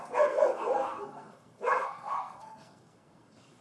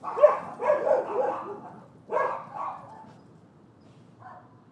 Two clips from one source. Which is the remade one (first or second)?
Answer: first